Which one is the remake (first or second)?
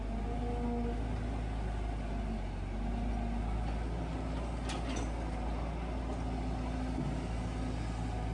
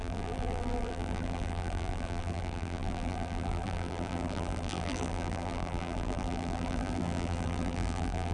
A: second